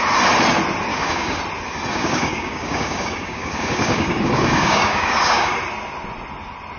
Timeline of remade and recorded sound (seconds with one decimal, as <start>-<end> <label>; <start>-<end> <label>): 0.0-0.9 recorded; 0.9-1.4 remade; 1.4-1.9 recorded; 1.9-5.6 remade; 5.6-6.8 recorded